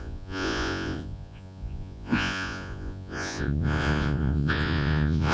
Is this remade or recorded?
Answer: remade